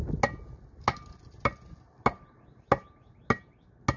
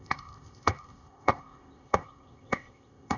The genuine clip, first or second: first